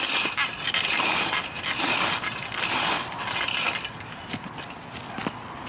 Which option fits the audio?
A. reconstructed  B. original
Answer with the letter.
B